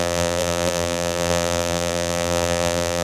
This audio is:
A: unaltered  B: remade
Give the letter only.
B